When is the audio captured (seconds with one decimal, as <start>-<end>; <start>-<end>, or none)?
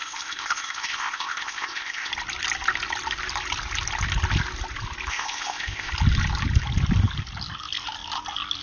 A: 2.1-5.1; 5.9-8.6